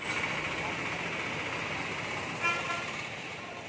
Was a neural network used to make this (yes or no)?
no